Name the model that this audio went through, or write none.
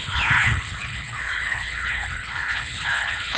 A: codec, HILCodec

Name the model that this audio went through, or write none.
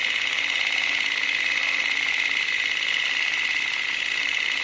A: none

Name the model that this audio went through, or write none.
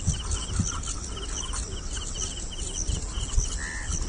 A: none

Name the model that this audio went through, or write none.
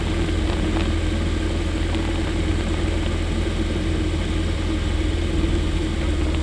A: none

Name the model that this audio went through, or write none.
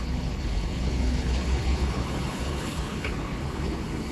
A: codec, HILCodec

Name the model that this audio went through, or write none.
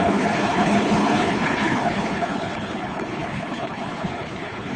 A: codec, HILCodec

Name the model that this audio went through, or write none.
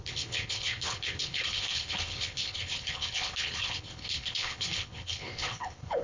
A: codec, HILCodec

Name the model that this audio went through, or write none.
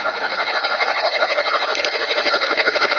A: codec, HILCodec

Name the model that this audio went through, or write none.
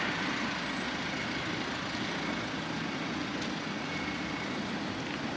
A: none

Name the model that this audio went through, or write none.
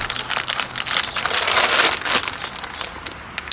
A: none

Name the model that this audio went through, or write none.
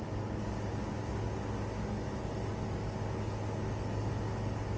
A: none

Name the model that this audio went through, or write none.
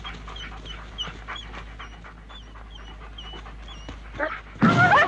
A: none